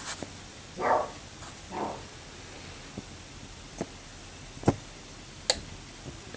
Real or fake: real